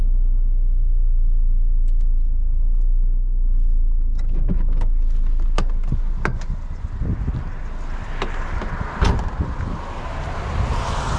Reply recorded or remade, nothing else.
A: recorded